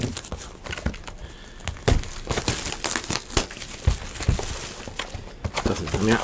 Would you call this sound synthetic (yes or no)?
no